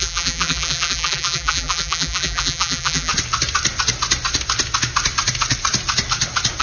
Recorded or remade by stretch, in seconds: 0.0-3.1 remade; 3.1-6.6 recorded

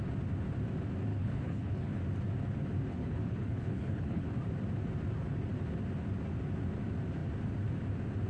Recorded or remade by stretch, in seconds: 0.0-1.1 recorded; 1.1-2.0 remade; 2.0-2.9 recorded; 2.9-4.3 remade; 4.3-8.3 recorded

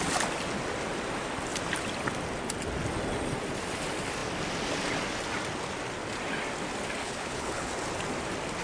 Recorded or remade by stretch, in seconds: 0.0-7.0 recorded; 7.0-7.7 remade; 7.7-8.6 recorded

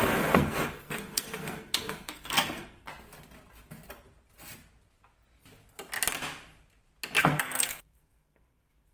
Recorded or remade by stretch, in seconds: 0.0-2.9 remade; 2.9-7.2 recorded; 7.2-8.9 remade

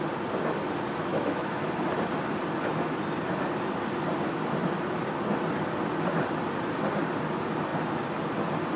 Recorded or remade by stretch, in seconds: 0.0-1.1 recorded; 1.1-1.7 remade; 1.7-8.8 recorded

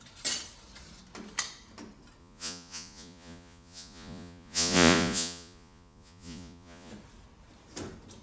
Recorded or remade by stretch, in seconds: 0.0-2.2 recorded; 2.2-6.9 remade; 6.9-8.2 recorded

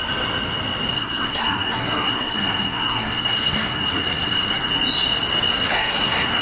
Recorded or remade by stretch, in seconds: 0.0-0.9 recorded; 0.9-4.7 remade; 4.7-5.5 recorded; 5.5-6.4 remade